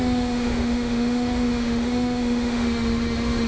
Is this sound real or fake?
fake